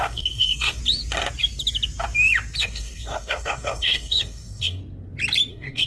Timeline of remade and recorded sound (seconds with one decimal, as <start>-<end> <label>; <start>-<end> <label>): 0.0-0.8 remade; 0.8-2.6 recorded; 2.6-4.8 remade; 4.8-5.5 recorded; 5.5-5.9 remade